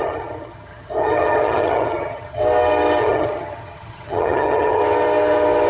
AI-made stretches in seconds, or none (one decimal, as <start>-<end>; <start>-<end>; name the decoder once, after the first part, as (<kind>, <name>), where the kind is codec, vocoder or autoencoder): 0.0-2.4 (vocoder, HiFi-GAN); 3.0-4.8